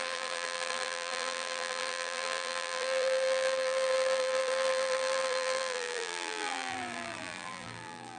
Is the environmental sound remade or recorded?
remade